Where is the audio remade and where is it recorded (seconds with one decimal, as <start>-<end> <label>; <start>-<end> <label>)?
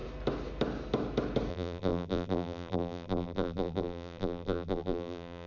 0.0-1.5 recorded; 1.5-5.5 remade